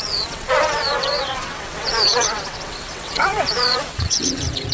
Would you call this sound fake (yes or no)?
yes